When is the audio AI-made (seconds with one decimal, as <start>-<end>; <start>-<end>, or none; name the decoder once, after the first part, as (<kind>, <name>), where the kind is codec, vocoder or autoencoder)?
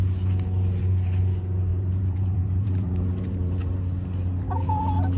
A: 1.7-4.8 (vocoder, BigVGAN v2)